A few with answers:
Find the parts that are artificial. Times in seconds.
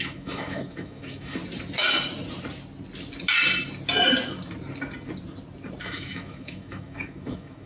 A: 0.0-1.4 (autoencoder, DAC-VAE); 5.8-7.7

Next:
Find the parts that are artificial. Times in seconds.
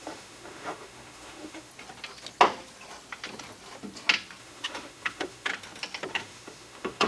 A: 0.0-1.7 (autoencoder, DAC-VAE); 4.4-5.5; 6.1-7.1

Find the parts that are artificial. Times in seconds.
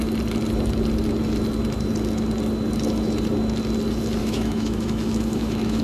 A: 4.2-5.8 (autoencoder, DAC-VAE)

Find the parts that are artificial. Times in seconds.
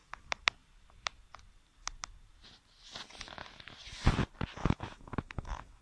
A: 4.6-5.8 (autoencoder, DAC-VAE)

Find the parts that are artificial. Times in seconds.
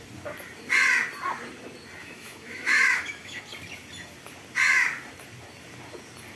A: 2.0-3.4 (autoencoder, DAC-VAE)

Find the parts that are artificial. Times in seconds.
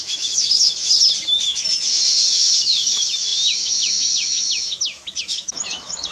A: 0.0-0.9 (autoencoder, DAC-VAE); 1.4-6.1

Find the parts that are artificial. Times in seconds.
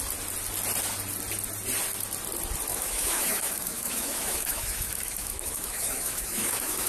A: 2.7-6.9 (autoencoder, DAC-VAE)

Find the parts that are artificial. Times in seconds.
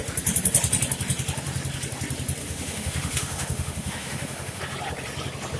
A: 2.4-4.6 (autoencoder, DAC-VAE)